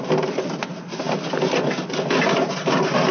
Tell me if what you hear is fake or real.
real